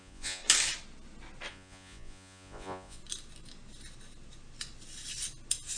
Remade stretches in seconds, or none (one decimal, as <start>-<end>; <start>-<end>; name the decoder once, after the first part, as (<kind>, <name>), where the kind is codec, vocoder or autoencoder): 0.0-0.4 (vocoder, Vocos); 1.5-3.0